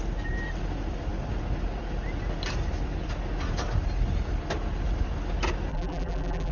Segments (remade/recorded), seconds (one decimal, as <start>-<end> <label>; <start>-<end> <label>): 0.0-5.7 recorded; 5.7-6.5 remade